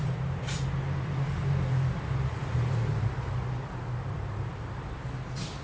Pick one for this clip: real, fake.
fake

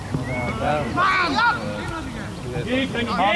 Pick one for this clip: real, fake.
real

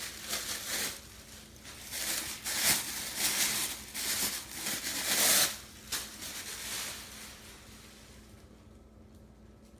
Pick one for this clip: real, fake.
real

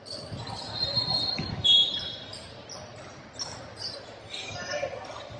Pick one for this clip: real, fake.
real